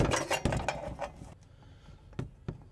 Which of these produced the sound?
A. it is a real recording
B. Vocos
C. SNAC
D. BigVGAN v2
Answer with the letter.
A